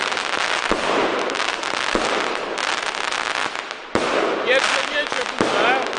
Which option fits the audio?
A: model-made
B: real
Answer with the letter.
B